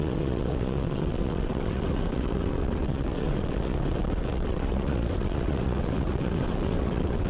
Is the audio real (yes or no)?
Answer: no